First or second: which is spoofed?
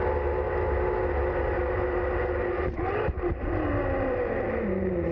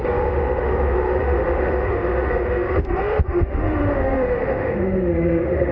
second